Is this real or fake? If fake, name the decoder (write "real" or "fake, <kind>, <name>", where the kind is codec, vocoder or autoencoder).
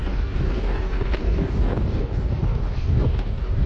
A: fake, codec, DAC